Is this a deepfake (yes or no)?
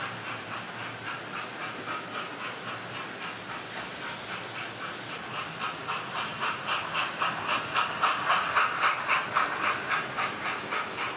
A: no